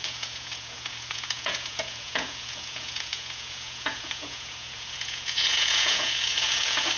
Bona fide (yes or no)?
no